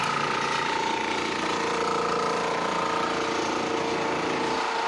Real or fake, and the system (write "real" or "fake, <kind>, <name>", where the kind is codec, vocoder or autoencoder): real